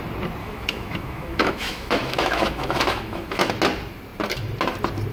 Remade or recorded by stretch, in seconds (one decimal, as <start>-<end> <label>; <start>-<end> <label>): 0.0-0.4 recorded; 0.4-3.5 remade; 3.5-5.1 recorded